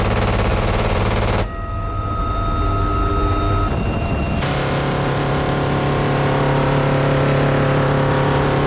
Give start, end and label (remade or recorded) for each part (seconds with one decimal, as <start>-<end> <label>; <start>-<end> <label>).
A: 0.0-0.5 recorded; 0.5-1.0 remade; 1.0-8.7 recorded